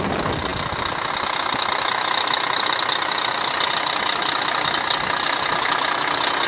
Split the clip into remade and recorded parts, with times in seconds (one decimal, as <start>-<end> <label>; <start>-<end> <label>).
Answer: 0.0-6.5 recorded